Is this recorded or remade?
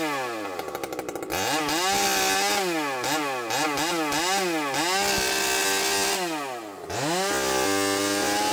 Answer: recorded